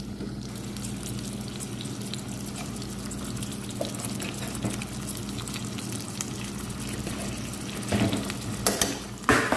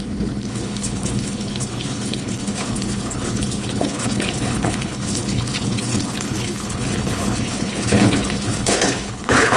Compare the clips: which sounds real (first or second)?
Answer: first